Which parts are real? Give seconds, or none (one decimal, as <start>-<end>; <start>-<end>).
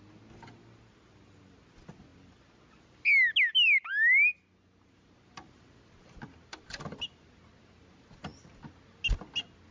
0.0-9.7